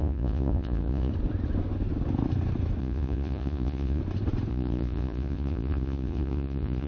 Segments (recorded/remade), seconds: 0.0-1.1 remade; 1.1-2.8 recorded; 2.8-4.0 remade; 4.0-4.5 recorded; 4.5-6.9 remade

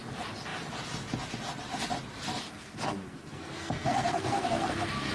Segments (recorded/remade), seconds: 0.0-2.4 recorded; 2.4-5.1 remade

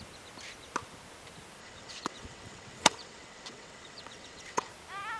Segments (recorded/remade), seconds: 0.0-1.6 recorded; 1.6-4.7 remade; 4.7-5.2 recorded

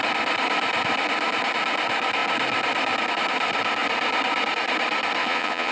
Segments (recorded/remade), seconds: 0.0-5.2 recorded; 5.2-5.7 remade